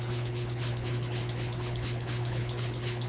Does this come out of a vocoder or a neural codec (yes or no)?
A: yes